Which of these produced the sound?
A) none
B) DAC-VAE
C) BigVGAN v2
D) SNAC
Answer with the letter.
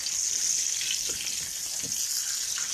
A